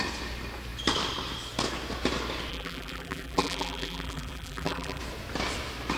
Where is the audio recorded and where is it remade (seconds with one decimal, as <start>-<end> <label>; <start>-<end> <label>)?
0.0-2.5 recorded; 2.5-5.0 remade; 5.0-6.0 recorded